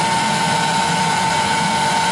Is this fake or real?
fake